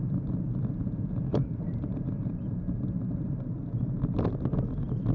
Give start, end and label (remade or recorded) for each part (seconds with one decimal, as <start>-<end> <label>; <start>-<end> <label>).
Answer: 0.0-1.3 recorded; 1.3-4.4 remade; 4.4-5.1 recorded